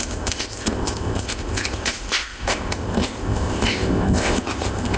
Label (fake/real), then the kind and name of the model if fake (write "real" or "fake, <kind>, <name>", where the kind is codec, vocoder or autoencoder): fake, codec, ZipCodec